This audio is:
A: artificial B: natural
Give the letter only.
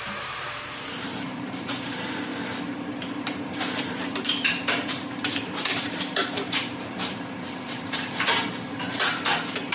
A